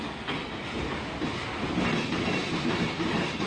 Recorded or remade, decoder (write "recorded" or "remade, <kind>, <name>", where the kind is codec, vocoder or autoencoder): recorded